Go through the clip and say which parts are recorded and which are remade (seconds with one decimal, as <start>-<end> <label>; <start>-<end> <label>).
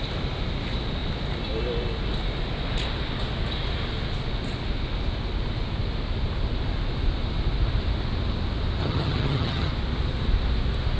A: 0.0-8.8 recorded; 8.8-9.7 remade; 9.7-11.0 recorded